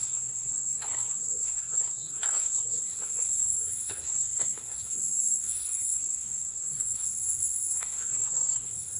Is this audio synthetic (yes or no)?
yes